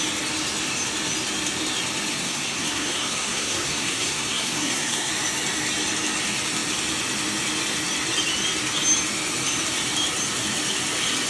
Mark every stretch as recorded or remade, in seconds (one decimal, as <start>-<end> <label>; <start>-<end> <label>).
0.0-2.1 recorded; 2.1-5.1 remade; 5.1-11.3 recorded